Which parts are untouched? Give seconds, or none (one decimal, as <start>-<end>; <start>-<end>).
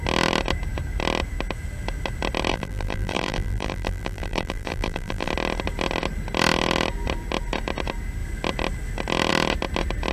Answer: 0.0-2.5; 5.3-10.1